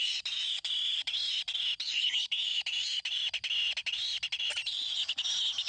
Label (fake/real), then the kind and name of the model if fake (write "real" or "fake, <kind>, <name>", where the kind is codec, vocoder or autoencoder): real